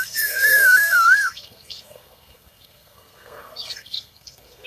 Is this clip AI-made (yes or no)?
yes